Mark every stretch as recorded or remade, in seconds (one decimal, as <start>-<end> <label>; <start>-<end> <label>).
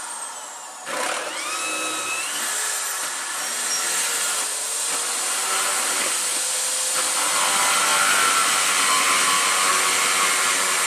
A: 0.0-10.9 recorded